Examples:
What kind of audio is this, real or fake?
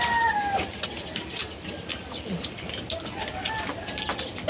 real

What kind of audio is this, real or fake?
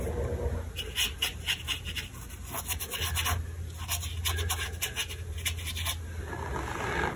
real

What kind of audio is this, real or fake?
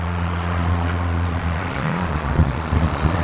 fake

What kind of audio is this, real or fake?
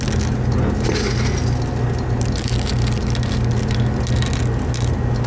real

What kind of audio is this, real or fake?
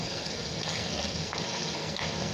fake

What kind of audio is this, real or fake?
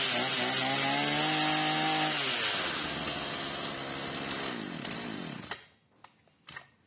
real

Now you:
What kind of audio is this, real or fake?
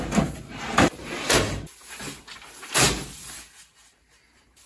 fake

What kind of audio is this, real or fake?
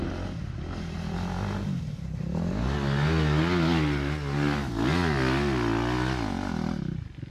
real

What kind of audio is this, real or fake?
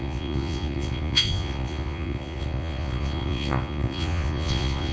fake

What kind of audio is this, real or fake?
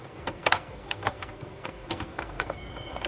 fake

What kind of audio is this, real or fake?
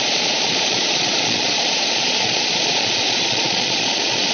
fake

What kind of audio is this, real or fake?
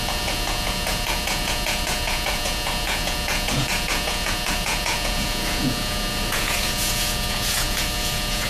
fake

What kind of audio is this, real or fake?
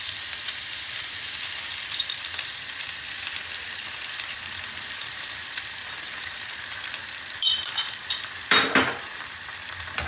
fake